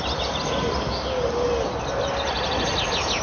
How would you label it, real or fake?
real